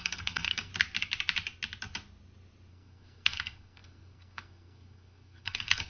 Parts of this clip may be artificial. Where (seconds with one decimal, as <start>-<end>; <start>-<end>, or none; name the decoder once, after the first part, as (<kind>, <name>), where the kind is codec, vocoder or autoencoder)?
0.0-0.7 (codec, SNAC); 2.7-5.9

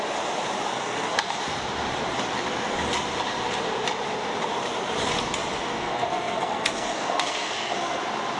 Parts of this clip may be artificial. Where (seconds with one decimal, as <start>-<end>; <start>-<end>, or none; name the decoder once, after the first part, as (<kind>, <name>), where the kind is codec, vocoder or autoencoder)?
0.7-1.4 (codec, SNAC); 5.6-8.0

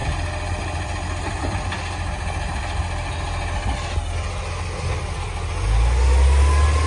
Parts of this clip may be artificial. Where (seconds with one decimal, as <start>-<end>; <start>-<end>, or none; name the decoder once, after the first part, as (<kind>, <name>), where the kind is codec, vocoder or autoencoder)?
none

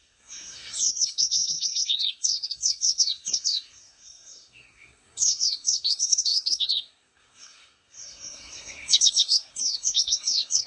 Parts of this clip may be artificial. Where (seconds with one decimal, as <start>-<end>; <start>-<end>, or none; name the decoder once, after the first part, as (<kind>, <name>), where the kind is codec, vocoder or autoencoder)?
0.0-10.7 (codec, SNAC)